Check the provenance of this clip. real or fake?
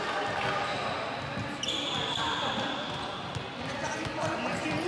real